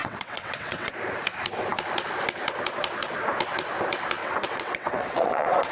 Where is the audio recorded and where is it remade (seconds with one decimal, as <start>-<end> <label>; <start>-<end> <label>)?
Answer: 0.0-0.9 remade; 0.9-4.2 recorded; 4.2-5.7 remade